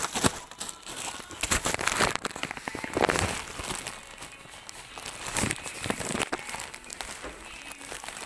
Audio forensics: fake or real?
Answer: real